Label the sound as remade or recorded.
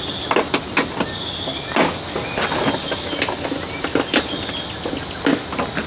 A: recorded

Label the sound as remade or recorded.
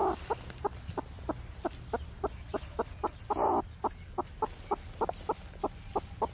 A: recorded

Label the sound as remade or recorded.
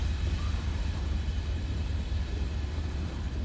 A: remade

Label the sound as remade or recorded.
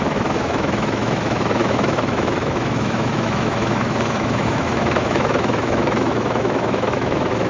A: remade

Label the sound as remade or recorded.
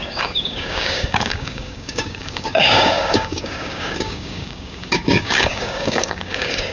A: remade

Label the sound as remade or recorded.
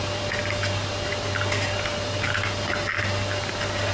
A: remade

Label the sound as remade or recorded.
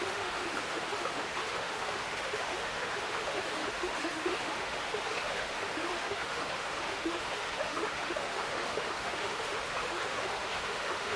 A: remade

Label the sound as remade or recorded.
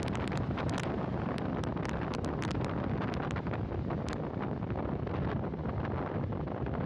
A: recorded